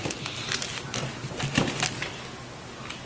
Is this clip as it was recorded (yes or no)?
yes